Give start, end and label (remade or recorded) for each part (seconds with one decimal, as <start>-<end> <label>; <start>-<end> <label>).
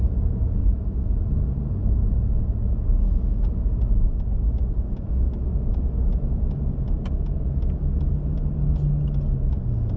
0.0-0.6 recorded; 0.6-1.3 remade; 1.3-5.5 recorded; 5.5-7.5 remade; 7.5-10.0 recorded